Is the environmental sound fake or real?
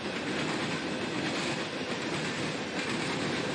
real